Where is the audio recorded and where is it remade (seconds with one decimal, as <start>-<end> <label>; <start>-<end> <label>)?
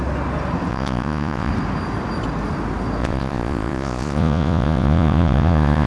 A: 0.0-0.7 recorded; 0.7-1.5 remade; 1.5-3.0 recorded; 3.0-5.9 remade